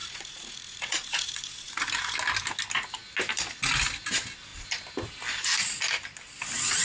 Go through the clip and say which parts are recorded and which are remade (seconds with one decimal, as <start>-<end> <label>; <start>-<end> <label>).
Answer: 0.0-1.7 remade; 1.7-6.8 recorded